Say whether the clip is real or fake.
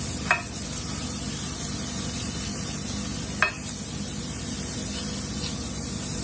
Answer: real